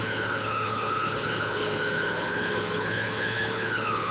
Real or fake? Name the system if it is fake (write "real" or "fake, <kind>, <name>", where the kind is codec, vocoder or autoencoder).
fake, codec, HILCodec